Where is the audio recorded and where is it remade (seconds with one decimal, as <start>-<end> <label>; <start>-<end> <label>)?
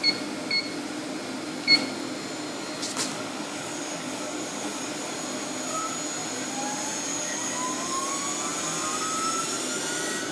0.0-3.1 recorded; 3.1-5.1 remade; 5.1-7.1 recorded; 7.1-8.1 remade; 8.1-10.3 recorded